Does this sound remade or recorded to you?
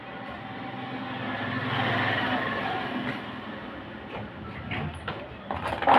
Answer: recorded